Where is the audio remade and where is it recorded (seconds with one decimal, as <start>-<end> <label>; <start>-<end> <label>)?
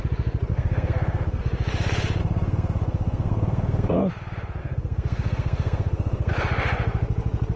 0.0-0.5 recorded; 0.5-1.4 remade; 1.4-2.2 recorded; 2.2-4.1 remade; 4.1-4.6 recorded; 4.6-6.3 remade; 6.3-7.6 recorded